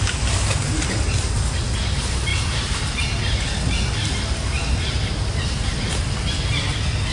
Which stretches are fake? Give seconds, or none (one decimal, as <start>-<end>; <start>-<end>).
none